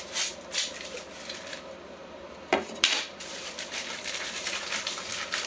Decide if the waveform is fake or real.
fake